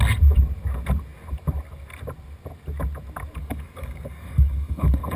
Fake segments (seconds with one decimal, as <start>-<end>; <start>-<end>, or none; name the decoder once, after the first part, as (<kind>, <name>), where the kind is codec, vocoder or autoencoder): 3.4-5.2 (codec, DAC)